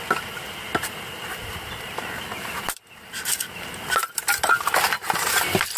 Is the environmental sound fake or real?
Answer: real